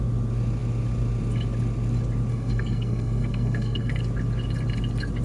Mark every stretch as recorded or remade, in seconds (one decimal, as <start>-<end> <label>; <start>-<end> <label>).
0.0-2.3 recorded; 2.3-4.0 remade; 4.0-5.2 recorded